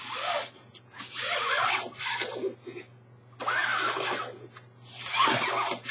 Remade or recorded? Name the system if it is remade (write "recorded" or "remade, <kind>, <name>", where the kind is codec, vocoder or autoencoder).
recorded